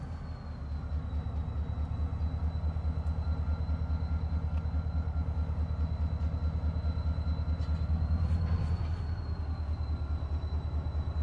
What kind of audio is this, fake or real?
real